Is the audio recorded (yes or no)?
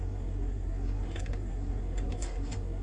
no